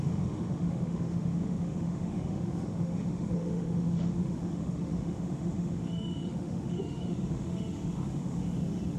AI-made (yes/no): yes